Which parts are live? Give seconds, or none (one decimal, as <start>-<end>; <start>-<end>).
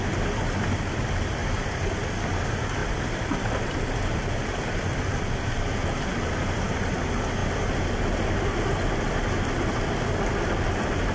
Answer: 0.0-1.4; 2.0-2.8; 3.7-11.1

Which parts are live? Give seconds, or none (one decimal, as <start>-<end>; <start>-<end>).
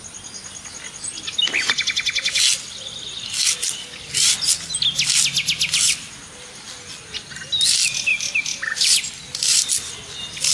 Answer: 0.0-8.1; 9.0-10.5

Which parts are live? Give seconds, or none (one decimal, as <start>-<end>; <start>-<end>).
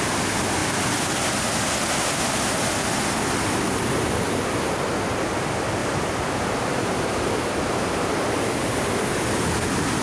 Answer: 0.0-5.8; 8.9-10.0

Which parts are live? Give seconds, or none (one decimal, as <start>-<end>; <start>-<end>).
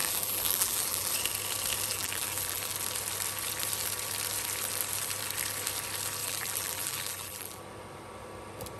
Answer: 1.1-1.9; 2.7-6.2; 7.6-8.8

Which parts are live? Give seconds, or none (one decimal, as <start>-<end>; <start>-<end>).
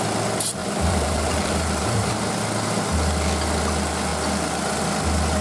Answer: 0.0-0.6; 2.1-5.4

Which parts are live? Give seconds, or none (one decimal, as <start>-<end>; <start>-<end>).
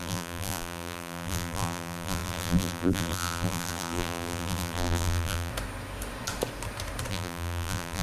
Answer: 5.5-7.1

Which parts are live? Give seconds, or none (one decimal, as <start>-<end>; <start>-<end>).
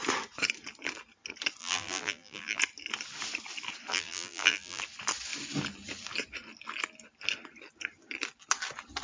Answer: 0.0-1.6; 2.6-3.9; 4.8-9.0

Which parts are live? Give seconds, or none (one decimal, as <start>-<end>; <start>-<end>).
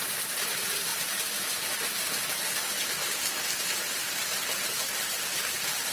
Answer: none